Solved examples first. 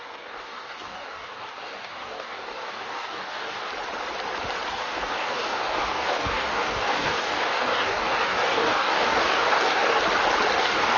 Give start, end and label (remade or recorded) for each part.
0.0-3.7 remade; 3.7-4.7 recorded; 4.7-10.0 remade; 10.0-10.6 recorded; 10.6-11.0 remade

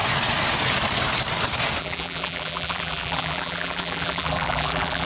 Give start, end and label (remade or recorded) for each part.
0.0-1.8 recorded; 1.8-5.0 remade

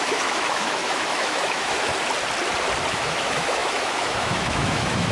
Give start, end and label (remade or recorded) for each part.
0.0-1.9 remade; 1.9-2.9 recorded; 2.9-5.1 remade

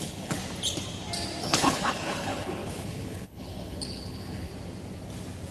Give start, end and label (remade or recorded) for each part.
0.0-0.4 remade; 0.4-1.4 recorded; 1.4-4.5 remade; 4.5-5.5 recorded